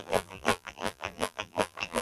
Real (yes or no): no